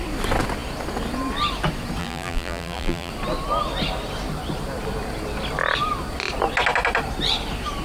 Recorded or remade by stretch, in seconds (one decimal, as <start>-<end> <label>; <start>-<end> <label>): 0.0-2.0 recorded; 2.0-3.1 remade; 3.1-7.8 recorded